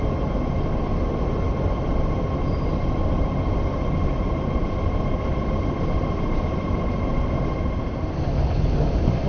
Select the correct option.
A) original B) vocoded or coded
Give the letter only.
A